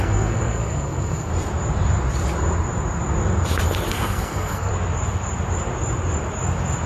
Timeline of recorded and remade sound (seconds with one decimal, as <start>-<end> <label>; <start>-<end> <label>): 0.0-1.3 remade; 1.3-3.9 recorded; 3.9-4.7 remade; 4.7-6.9 recorded